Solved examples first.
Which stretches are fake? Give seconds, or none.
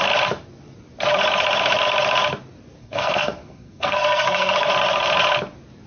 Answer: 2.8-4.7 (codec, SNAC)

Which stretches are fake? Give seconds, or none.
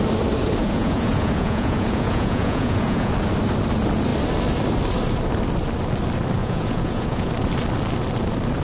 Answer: 0.6-3.1 (vocoder, Vocos); 6.4-7.3